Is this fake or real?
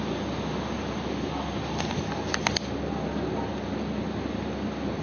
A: real